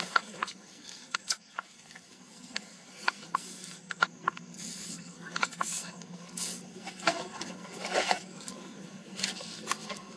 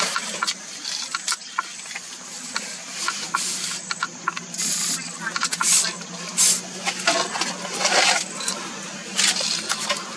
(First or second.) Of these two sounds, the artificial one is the first